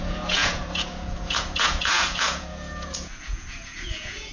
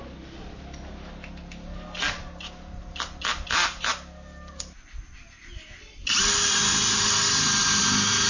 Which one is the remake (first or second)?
first